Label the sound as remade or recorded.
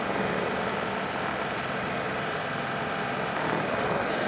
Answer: recorded